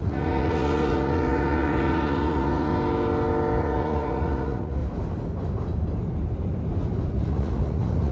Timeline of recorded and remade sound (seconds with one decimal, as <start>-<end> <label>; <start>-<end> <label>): 0.0-2.7 remade; 2.7-3.6 recorded; 3.6-4.8 remade; 4.8-7.1 recorded; 7.1-8.1 remade

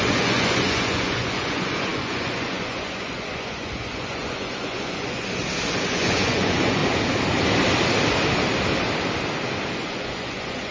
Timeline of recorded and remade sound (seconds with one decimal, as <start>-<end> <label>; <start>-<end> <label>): 0.0-5.4 remade; 5.4-5.9 recorded; 5.9-6.8 remade; 6.8-9.7 recorded; 9.7-10.7 remade

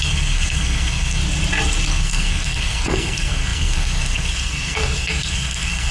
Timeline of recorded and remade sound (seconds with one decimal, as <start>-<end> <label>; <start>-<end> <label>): 0.0-1.2 remade; 1.2-1.9 recorded; 1.9-5.9 remade

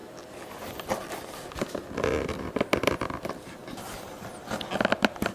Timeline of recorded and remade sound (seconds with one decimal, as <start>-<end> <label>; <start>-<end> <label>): 0.0-5.3 recorded

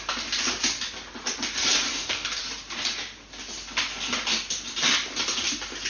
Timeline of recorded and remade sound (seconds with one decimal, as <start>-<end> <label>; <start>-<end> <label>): 0.0-1.9 recorded; 1.9-2.4 remade; 2.4-5.9 recorded

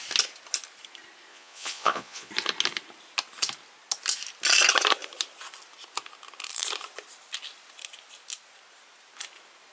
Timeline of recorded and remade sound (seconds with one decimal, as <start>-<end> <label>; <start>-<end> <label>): 0.0-1.3 recorded; 1.3-2.3 remade; 2.3-9.7 recorded